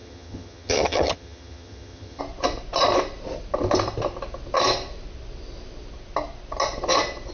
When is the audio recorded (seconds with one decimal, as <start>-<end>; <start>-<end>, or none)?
2.2-7.3